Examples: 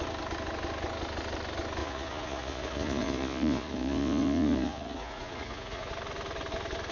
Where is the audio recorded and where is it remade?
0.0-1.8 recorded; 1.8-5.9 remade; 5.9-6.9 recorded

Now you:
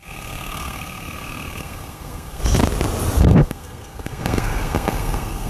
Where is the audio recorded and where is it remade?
0.0-2.4 remade; 2.4-3.2 recorded; 3.2-5.5 remade

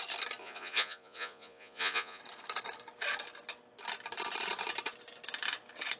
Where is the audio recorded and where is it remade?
0.0-0.4 recorded; 0.4-2.2 remade; 2.2-6.0 recorded

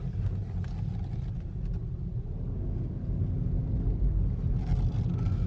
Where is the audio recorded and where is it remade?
0.0-5.5 recorded

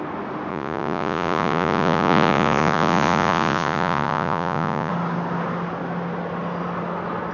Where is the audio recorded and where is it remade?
0.0-0.5 recorded; 0.5-4.9 remade; 4.9-7.3 recorded

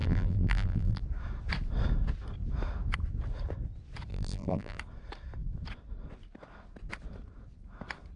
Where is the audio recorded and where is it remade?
0.0-1.0 remade; 1.0-4.1 recorded; 4.1-4.8 remade; 4.8-8.2 recorded

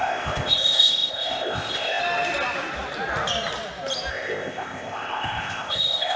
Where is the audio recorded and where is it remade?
0.0-2.0 remade; 2.0-4.1 recorded; 4.1-6.2 remade

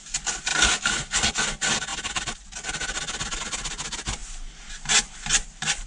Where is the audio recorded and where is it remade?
0.0-5.9 recorded